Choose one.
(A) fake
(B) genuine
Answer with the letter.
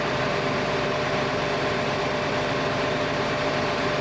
A